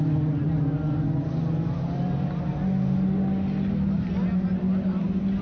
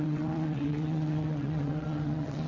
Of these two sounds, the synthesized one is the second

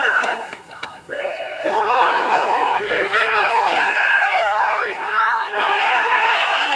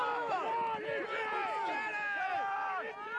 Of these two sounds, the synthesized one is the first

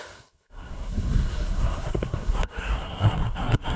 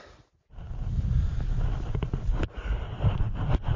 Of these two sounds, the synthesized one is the first